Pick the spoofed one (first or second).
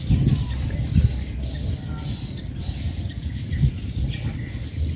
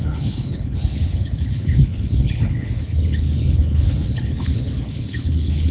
second